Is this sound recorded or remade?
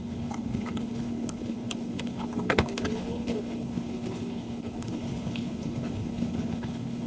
remade